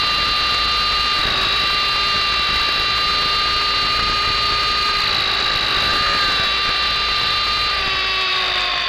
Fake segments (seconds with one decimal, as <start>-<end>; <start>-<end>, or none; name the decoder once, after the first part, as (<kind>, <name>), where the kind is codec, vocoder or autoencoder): none